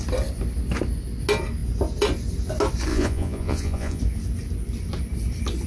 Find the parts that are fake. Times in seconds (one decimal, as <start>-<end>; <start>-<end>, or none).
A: 2.9-4.0